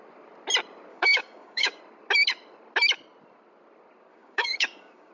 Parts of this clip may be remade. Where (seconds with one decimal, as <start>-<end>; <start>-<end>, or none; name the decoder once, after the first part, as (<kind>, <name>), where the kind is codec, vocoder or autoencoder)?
0.9-1.8 (codec, DAC); 4.1-5.1